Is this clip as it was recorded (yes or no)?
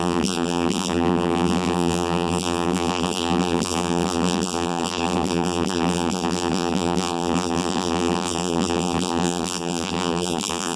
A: no